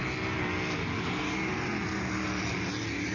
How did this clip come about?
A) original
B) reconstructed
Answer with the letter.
A